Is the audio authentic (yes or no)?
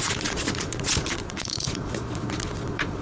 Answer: no